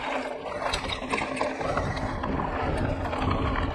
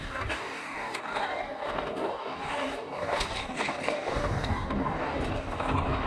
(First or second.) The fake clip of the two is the second